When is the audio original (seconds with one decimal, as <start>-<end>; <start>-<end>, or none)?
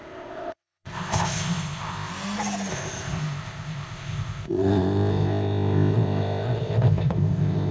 2.1-2.7